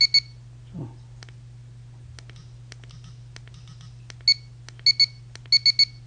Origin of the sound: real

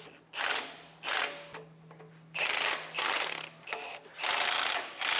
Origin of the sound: real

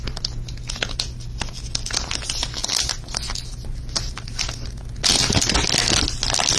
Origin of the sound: real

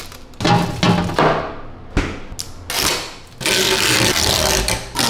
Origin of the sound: real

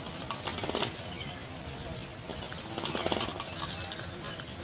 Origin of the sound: real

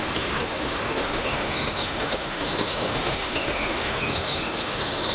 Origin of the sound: fake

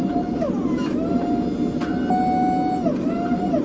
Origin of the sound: real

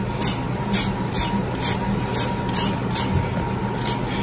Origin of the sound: real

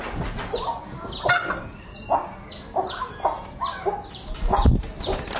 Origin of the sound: real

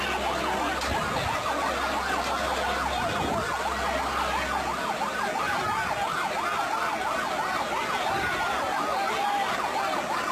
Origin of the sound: real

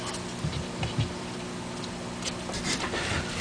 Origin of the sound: real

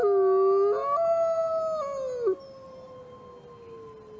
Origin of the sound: real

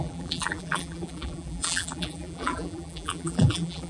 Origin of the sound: fake